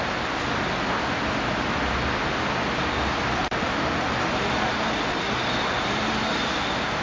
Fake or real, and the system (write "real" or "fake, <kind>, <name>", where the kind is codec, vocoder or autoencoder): real